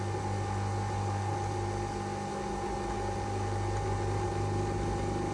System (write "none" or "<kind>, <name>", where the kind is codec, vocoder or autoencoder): none